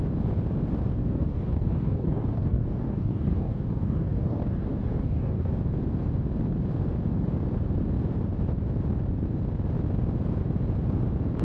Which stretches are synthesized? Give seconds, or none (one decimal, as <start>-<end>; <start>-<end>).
1.0-5.5

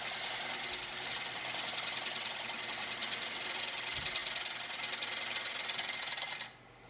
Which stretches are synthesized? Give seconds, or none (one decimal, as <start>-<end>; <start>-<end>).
3.0-3.6

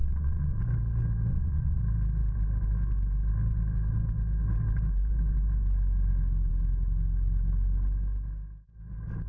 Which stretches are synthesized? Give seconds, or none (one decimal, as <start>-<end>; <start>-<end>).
0.0-0.6; 1.3-1.8

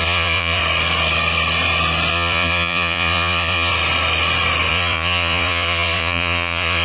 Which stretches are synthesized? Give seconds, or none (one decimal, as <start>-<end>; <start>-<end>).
0.0-0.6; 2.1-3.7; 4.7-6.8

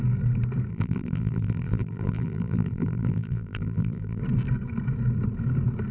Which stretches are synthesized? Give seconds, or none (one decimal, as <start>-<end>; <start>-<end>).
0.7-4.2